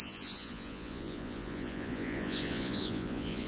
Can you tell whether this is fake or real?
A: fake